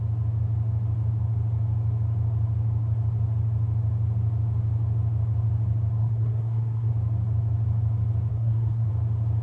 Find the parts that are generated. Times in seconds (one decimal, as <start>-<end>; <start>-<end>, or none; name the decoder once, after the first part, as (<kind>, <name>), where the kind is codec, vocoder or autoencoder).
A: 6.0-6.9 (codec, SNAC); 8.3-8.9